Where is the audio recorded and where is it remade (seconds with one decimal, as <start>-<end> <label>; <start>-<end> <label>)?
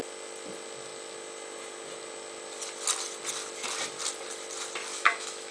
0.0-4.9 recorded; 4.9-5.5 remade